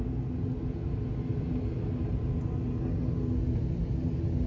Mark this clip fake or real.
real